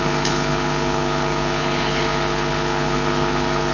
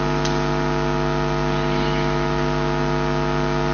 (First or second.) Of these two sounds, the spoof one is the first